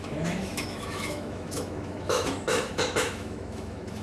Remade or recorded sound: remade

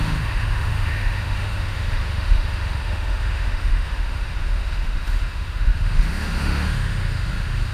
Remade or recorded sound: remade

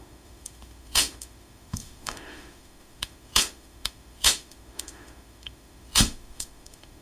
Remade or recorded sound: remade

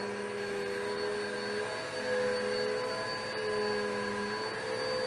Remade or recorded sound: recorded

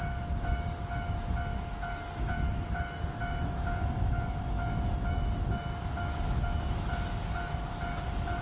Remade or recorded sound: remade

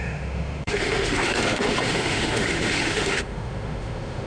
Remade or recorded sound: remade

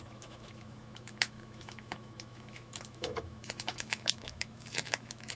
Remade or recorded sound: remade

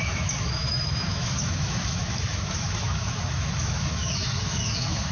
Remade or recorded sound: remade